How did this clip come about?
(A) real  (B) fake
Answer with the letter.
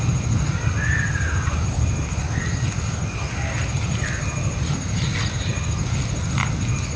A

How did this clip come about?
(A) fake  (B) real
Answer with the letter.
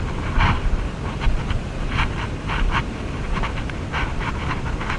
B